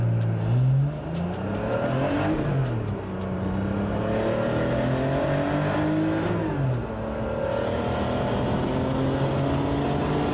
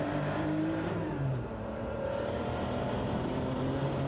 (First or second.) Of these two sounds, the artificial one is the second